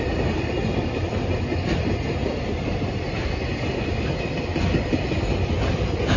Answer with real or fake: real